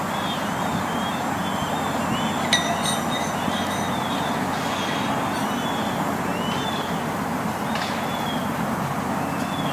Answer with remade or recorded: recorded